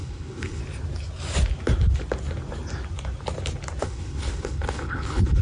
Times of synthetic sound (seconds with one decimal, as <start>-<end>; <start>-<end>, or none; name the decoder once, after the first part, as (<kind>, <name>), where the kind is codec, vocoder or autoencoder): 0.0-0.6 (codec, HILCodec); 3.8-5.4